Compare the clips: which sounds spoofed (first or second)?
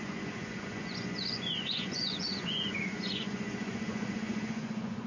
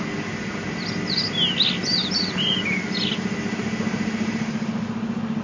first